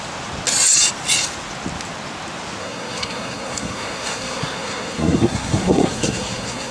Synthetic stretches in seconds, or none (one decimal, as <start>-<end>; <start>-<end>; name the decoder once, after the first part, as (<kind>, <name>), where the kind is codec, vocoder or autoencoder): 2.6-6.7 (codec, SNAC)